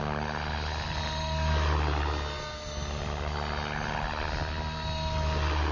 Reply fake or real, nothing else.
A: real